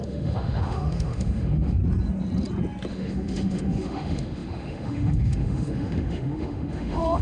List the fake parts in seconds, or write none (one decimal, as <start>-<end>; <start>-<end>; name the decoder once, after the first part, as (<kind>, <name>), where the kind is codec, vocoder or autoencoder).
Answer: 0.0-1.8 (autoencoder, DAC-VAE); 2.9-7.2